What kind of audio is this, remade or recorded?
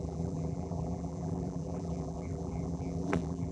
remade